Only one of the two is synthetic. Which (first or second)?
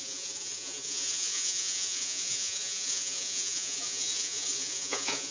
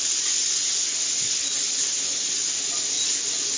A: first